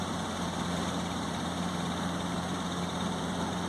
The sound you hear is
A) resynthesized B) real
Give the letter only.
A